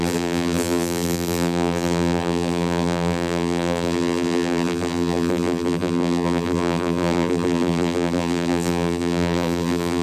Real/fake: fake